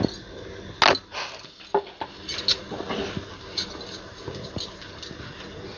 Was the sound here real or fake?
real